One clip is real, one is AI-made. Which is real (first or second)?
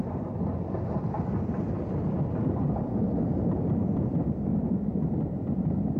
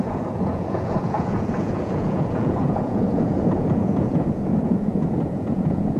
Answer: first